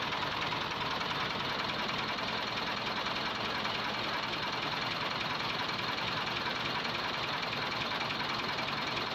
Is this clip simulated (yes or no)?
no